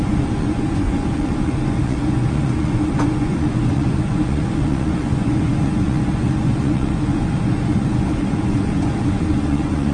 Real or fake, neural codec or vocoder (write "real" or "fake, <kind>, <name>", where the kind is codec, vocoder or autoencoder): fake, vocoder, Vocos